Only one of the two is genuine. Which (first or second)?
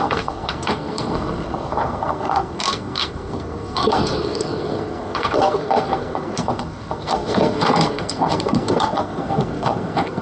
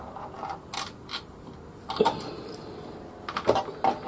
second